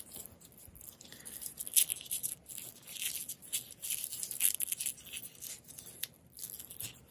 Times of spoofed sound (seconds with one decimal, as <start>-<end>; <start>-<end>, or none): none